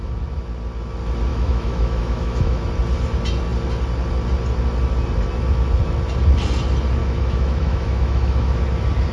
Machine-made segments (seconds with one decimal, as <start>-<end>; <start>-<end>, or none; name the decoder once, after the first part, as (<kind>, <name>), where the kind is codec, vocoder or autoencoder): 1.3-2.7 (autoencoder, DAC-VAE); 7.0-8.6